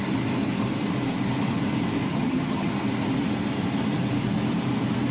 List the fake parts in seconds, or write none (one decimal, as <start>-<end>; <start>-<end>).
2.1-2.7